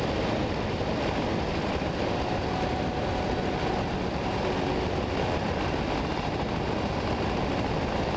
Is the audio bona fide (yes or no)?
yes